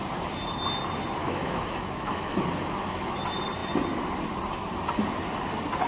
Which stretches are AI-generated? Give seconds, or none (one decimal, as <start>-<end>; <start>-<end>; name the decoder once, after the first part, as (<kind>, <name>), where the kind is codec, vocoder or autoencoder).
1.2-3.2 (autoencoder, DAC-VAE)